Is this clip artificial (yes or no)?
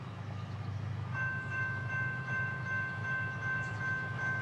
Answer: yes